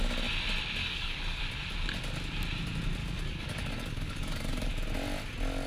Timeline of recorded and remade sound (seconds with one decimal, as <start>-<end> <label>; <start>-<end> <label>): 0.0-0.8 recorded; 0.8-1.4 remade; 1.4-3.0 recorded; 3.0-4.7 remade; 4.7-5.7 recorded